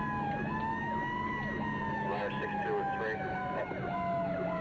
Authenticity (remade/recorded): recorded